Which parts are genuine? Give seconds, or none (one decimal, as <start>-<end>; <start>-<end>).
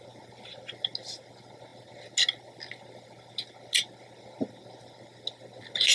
0.0-5.9